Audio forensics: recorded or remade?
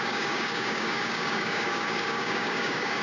remade